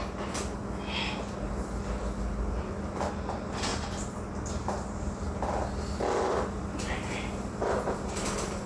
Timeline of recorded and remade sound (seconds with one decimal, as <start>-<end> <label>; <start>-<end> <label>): 0.0-8.7 recorded